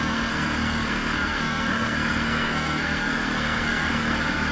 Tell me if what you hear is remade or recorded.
remade